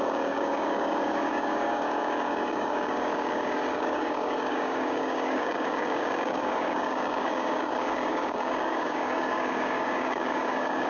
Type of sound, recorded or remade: remade